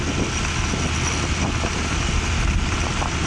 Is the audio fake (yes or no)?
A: no